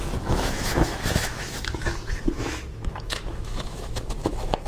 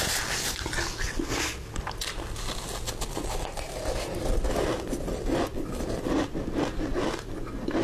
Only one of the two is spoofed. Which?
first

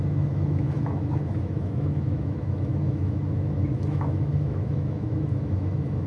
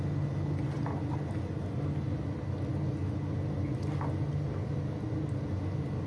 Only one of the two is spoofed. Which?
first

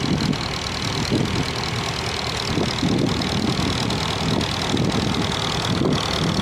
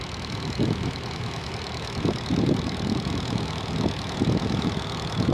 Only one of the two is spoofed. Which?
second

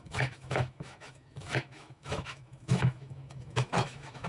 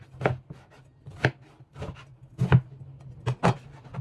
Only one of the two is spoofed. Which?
first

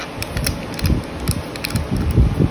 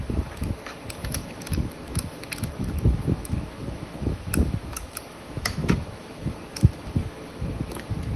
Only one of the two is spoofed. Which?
second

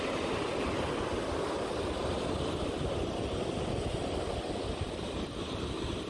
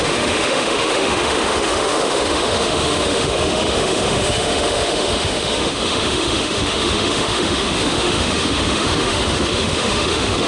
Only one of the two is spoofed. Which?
second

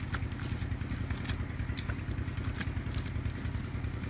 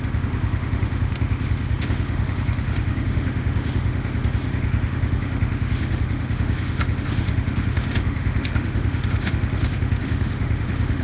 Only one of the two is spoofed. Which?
second